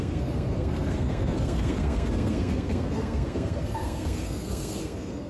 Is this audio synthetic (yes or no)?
yes